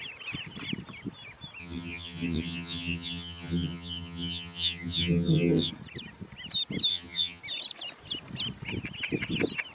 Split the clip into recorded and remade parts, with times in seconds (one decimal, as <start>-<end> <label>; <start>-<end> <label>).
0.0-1.6 recorded; 1.6-5.7 remade; 5.7-6.9 recorded; 6.9-7.4 remade; 7.4-9.7 recorded